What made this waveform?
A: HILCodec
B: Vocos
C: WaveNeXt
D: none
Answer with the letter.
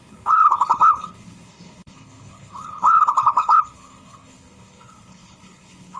A